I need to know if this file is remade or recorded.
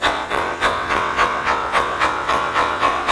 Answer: remade